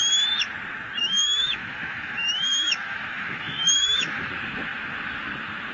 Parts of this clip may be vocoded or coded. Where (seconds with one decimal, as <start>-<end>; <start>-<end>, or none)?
1.0-4.3